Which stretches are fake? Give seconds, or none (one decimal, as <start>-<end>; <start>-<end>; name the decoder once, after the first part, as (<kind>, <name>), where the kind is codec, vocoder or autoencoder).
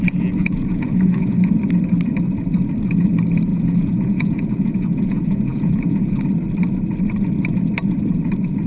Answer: 0.4-1.5 (vocoder, Vocos); 3.5-6.2